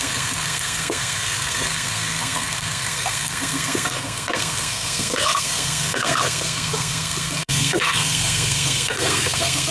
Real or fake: fake